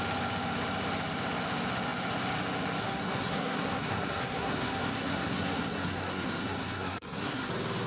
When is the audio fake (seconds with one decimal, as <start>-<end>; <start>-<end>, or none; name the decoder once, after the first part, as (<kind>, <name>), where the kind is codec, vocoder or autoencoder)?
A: 2.8-7.5 (codec, SNAC)